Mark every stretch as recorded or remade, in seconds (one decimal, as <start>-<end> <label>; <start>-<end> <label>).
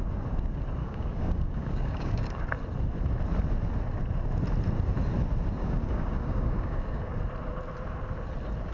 0.0-0.8 recorded; 0.8-2.4 remade; 2.4-5.6 recorded; 5.6-7.2 remade; 7.2-8.7 recorded